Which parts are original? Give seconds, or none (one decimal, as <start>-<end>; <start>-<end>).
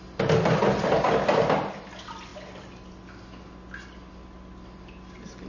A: 0.0-5.5